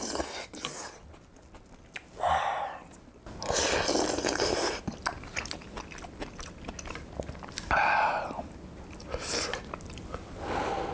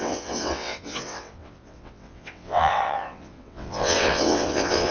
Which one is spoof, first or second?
second